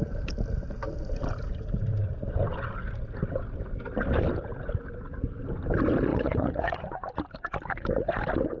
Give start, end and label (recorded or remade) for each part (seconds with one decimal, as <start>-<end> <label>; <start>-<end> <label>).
0.0-6.1 recorded; 6.1-7.1 remade; 7.1-8.6 recorded